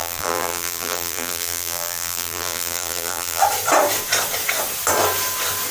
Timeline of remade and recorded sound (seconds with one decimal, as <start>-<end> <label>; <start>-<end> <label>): 0.0-3.4 remade; 3.4-5.7 recorded